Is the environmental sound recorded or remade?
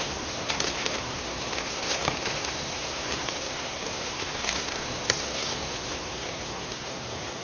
remade